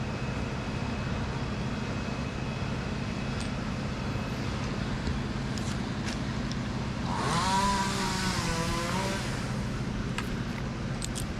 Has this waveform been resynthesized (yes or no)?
no